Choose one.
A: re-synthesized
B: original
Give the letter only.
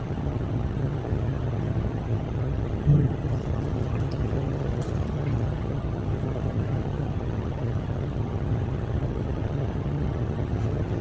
A